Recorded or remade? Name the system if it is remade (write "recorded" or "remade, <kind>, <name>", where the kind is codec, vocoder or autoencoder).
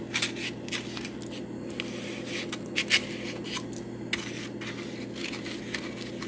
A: recorded